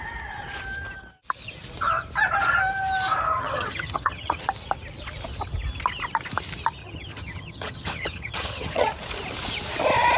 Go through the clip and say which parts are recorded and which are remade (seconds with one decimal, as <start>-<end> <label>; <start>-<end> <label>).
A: 0.0-3.3 recorded; 3.3-4.4 remade; 4.4-6.8 recorded; 6.8-8.9 remade; 8.9-10.2 recorded